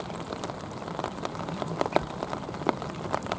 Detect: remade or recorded recorded